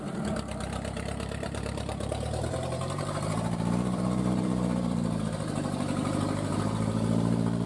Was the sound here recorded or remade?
remade